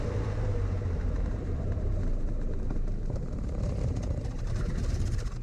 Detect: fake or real fake